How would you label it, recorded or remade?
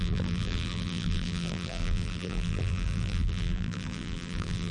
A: remade